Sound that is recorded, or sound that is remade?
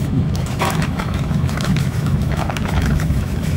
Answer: remade